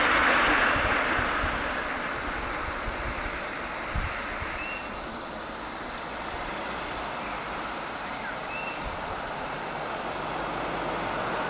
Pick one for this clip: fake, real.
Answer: fake